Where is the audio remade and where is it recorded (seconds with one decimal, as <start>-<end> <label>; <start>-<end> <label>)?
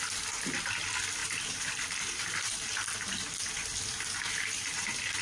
0.0-1.2 recorded; 1.2-3.5 remade; 3.5-5.2 recorded